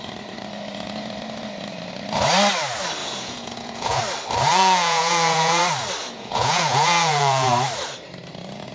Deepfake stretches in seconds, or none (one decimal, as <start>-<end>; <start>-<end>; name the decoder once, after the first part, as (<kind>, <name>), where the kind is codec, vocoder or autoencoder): 3.0-4.0 (vocoder, Vocos); 4.5-5.6; 6.0-7.5